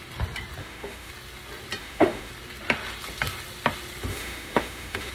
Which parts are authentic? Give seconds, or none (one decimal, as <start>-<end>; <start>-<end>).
0.0-0.6; 1.1-1.8; 2.3-4.1